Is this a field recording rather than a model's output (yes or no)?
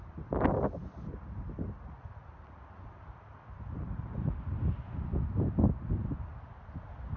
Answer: yes